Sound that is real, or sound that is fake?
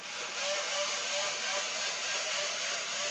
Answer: real